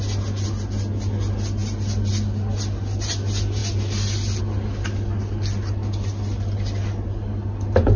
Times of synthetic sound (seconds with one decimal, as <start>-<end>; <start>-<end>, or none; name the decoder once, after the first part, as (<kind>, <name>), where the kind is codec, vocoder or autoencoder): none